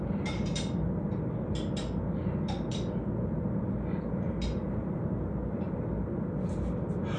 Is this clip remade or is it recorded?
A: recorded